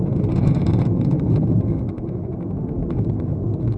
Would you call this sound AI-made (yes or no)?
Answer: yes